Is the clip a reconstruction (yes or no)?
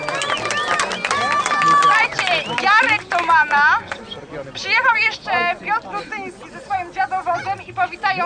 no